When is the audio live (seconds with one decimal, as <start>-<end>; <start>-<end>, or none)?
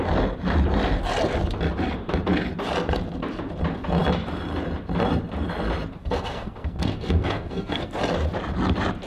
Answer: 0.0-6.0; 8.0-9.1